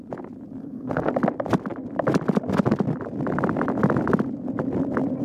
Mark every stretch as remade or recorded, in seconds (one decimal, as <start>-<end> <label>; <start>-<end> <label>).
0.0-0.6 recorded; 0.6-1.1 remade; 1.1-5.2 recorded